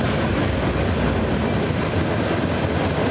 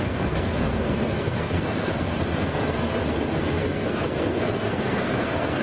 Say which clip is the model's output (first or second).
second